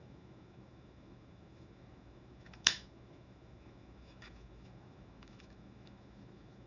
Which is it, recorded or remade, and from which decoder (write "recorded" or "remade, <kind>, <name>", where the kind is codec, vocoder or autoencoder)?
remade, autoencoder, DAC-VAE